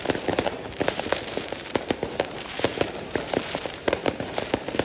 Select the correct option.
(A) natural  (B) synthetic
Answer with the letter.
B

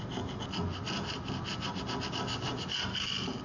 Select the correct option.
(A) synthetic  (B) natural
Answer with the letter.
B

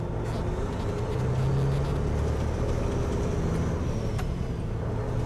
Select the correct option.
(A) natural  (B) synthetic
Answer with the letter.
A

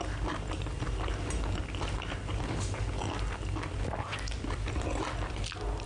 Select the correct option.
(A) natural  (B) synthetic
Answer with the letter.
A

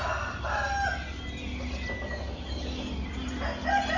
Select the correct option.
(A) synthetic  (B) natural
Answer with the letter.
B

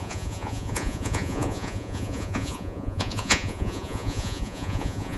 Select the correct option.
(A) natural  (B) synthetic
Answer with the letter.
B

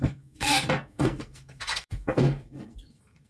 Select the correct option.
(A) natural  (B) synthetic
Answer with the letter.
B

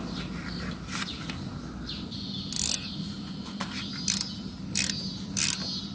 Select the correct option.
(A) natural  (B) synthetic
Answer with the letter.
A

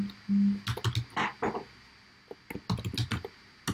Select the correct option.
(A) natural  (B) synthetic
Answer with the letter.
A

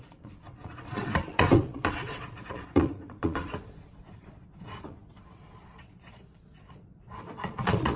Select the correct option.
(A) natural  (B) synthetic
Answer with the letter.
B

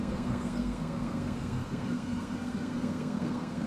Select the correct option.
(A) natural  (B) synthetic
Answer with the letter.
B